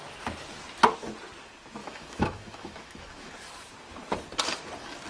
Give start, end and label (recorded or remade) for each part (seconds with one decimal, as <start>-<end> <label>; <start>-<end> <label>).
0.0-1.8 recorded; 1.8-3.3 remade; 3.3-5.1 recorded

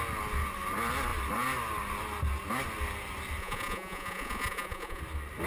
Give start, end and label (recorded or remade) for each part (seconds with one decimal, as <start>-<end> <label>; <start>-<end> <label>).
0.0-3.4 recorded; 3.4-5.0 remade; 5.0-5.5 recorded

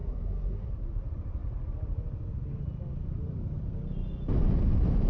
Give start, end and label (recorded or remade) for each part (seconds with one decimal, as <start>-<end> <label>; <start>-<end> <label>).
0.0-0.7 remade; 0.7-5.1 recorded

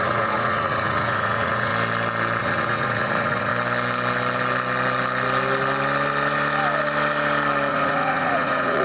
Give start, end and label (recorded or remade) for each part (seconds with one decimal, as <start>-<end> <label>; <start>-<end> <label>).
0.0-1.7 remade; 1.7-2.4 recorded; 2.4-3.5 remade; 3.5-7.7 recorded; 7.7-8.8 remade

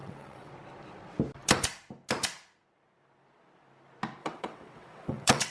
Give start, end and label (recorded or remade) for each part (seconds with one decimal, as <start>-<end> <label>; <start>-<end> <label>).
0.0-0.5 remade; 0.5-4.2 recorded; 4.2-5.5 remade